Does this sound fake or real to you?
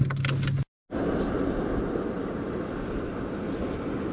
real